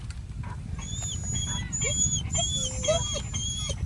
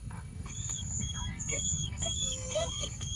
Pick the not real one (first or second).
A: second